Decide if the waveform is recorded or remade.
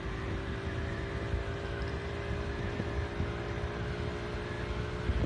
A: recorded